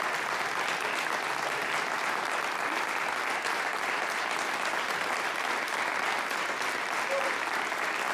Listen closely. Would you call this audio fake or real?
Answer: real